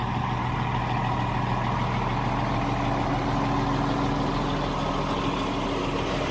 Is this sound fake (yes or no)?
no